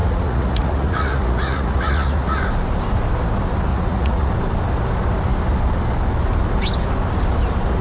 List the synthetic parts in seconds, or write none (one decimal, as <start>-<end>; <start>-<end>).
0.0-2.4; 3.7-4.3